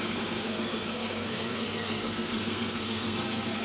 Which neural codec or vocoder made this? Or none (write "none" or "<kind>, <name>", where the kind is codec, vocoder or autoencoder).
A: codec, SNAC